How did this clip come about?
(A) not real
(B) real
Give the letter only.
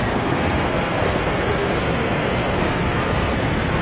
A